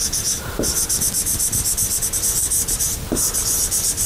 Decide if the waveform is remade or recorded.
recorded